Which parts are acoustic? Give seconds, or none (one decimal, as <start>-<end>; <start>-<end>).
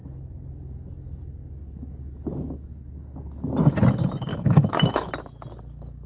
0.0-4.3; 5.1-6.1